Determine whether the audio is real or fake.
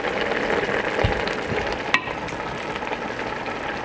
real